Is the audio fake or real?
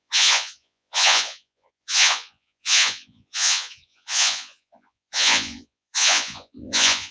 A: fake